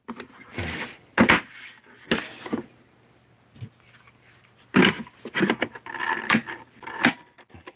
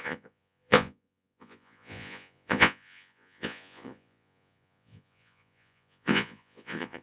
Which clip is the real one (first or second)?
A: first